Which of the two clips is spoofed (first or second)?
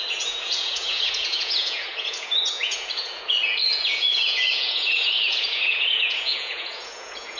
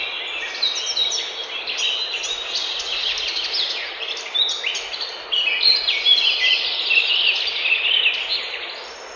first